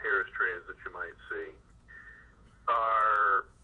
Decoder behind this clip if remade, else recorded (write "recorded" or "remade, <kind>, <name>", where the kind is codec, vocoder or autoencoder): remade, vocoder, Vocos